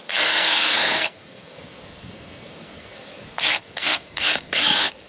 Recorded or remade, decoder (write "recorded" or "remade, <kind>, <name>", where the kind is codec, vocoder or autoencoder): remade, codec, SNAC